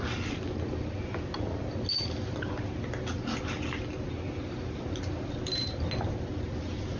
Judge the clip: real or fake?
real